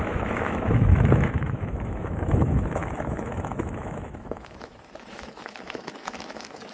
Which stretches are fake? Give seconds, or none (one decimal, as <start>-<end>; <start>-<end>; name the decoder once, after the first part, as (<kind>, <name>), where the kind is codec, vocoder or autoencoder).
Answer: 0.0-6.7 (autoencoder, DAC-VAE)